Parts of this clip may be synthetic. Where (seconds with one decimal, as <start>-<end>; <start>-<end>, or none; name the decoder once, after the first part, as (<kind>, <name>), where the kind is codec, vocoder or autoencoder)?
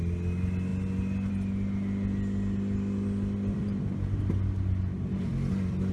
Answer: none